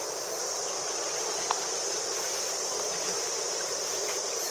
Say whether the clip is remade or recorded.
recorded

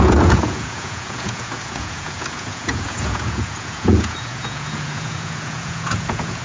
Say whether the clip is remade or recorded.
remade